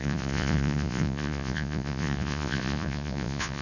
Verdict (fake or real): fake